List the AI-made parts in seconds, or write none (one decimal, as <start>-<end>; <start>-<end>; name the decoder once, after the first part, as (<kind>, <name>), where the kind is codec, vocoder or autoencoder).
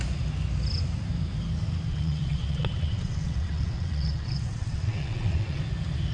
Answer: 1.9-5.6 (vocoder, WaveNeXt)